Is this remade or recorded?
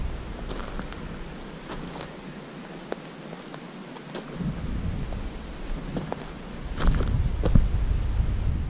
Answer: recorded